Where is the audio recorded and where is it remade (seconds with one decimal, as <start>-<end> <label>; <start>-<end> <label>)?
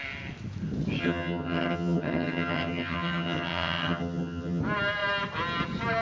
0.0-1.0 recorded; 1.0-4.6 remade; 4.6-6.0 recorded